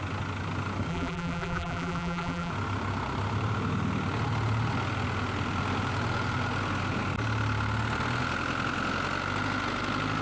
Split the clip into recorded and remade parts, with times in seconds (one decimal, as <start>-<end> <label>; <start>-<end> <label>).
0.0-0.9 recorded; 0.9-2.5 remade; 2.5-10.2 recorded